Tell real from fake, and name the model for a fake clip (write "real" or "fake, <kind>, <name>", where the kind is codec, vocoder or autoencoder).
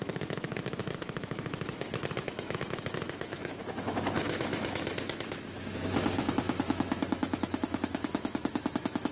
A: fake, autoencoder, DAC-VAE